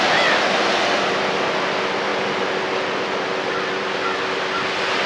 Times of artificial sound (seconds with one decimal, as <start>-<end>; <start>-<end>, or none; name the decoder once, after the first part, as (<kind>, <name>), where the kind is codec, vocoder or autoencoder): none